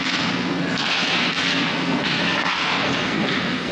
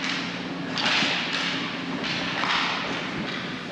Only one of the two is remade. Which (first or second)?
first